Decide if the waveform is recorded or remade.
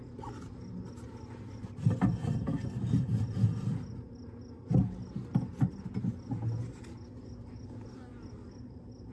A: recorded